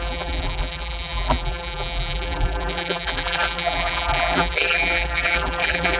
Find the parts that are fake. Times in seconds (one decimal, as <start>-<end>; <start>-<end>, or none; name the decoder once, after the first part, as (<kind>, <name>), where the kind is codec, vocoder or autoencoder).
0.0-6.0 (vocoder, BigVGAN v2)